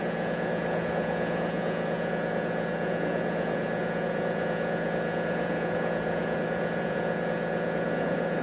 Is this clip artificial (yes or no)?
yes